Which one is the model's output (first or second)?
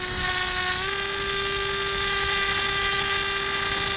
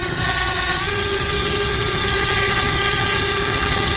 second